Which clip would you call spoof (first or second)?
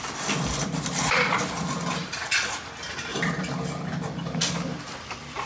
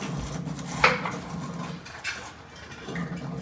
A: first